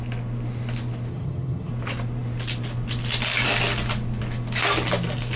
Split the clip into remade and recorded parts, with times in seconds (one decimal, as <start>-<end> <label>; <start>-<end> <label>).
0.0-1.1 recorded; 1.1-1.7 remade; 1.7-5.4 recorded